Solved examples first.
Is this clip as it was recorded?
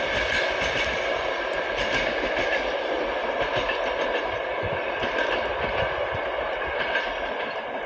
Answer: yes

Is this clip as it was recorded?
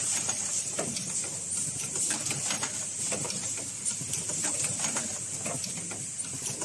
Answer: no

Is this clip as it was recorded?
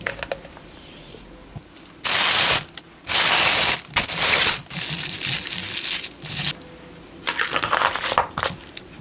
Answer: yes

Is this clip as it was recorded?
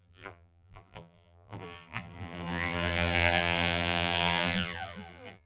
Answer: no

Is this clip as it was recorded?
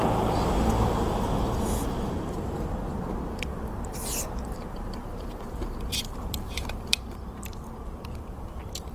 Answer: no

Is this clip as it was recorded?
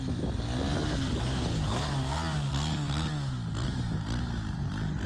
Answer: yes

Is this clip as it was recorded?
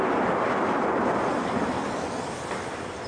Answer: no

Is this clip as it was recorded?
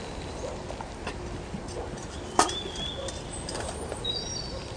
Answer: no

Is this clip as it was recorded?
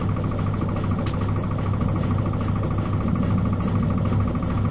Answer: yes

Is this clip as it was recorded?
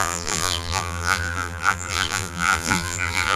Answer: no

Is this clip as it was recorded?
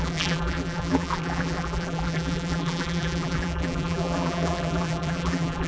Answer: no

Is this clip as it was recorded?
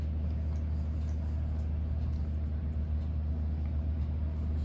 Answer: yes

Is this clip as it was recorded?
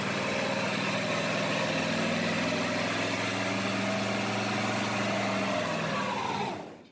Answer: yes